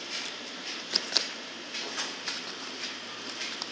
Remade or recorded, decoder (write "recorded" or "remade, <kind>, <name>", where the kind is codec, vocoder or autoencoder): recorded